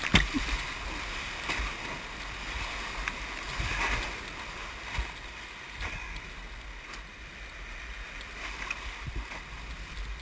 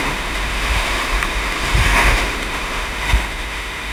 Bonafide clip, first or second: first